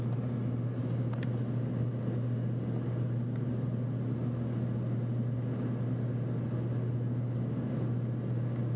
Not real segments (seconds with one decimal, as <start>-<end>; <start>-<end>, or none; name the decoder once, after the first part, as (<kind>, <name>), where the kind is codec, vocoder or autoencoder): 0.8-1.3 (vocoder, BigVGAN v2)